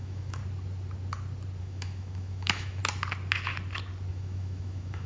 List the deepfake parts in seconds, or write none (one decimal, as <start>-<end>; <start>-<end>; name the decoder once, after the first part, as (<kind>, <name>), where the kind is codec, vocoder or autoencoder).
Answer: 0.0-0.4 (autoencoder, DAC-VAE); 1.6-2.8; 4.1-5.1